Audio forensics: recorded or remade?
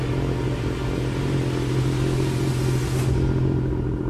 recorded